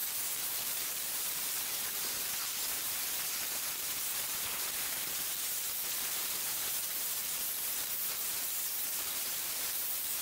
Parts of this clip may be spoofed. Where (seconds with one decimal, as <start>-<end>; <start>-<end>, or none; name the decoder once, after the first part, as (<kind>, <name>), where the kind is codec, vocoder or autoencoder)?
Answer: 0.0-10.2 (vocoder, BigVGAN v2)